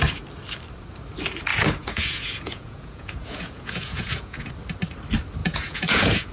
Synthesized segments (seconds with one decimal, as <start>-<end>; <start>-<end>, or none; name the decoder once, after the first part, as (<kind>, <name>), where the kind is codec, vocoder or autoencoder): 1.5-4.5 (vocoder, Vocos); 5.4-6.3